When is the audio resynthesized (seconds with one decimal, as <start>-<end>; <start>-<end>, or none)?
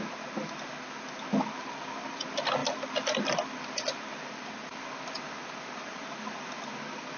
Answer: none